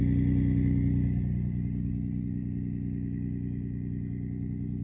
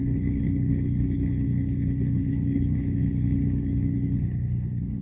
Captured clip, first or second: first